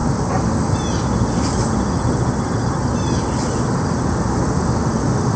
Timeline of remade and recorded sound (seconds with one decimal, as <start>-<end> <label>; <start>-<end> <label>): 0.0-5.4 recorded